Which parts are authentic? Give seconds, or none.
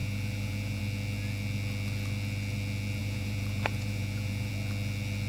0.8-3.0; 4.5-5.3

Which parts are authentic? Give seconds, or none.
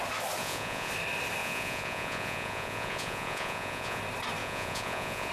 0.0-0.4; 0.9-1.4; 4.0-4.4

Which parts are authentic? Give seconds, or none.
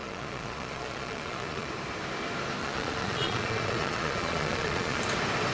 1.7-2.6; 5.0-5.5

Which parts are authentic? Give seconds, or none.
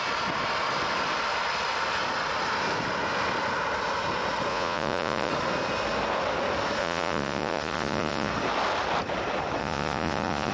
0.0-4.5; 5.3-6.8; 8.3-9.6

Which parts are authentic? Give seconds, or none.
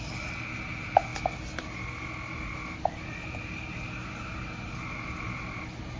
0.0-6.0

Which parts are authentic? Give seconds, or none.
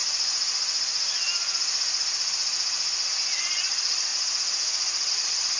0.0-3.4; 4.1-5.1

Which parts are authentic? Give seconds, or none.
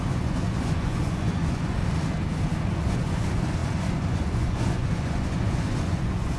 1.8-2.7